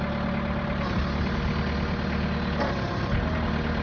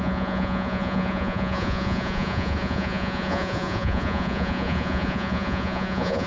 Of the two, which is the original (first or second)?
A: first